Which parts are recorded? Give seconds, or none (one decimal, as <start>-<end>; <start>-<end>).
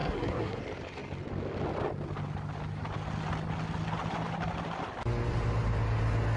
0.6-6.4